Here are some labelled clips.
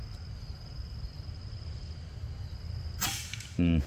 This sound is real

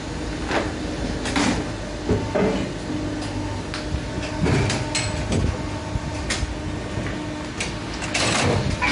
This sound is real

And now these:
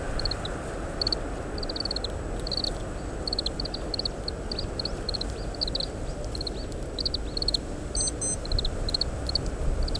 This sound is real